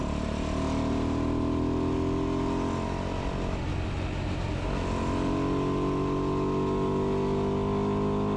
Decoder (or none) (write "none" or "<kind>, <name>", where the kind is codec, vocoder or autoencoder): none